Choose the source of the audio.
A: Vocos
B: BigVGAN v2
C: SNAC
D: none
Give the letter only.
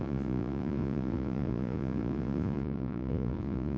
A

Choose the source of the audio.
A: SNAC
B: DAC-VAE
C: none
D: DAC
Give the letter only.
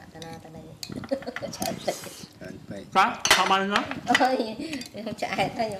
C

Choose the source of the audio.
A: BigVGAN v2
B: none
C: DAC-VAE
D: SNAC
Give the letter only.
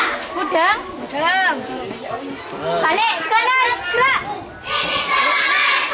B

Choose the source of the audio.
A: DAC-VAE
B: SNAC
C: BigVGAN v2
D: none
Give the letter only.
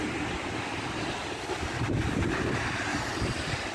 D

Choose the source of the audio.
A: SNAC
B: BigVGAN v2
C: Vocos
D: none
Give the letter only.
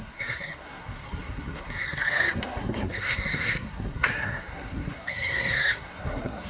A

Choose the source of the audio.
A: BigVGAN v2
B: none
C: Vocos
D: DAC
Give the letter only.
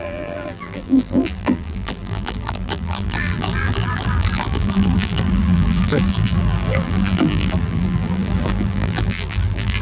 A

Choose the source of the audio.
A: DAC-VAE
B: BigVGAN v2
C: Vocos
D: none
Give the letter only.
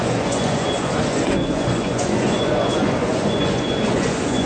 C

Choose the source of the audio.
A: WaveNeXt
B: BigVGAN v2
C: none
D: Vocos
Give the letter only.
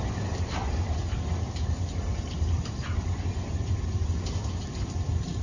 C